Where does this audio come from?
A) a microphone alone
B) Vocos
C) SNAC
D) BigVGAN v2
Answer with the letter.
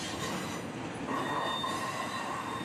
A